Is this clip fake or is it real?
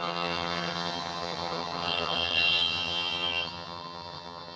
fake